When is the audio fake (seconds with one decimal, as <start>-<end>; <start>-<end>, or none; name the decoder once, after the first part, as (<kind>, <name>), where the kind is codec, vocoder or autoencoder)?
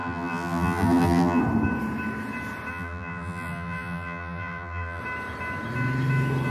0.0-1.4 (vocoder, BigVGAN v2); 2.7-5.0